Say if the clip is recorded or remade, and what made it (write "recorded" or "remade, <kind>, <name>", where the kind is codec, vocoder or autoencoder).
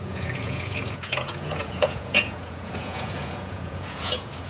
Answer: remade, vocoder, Vocos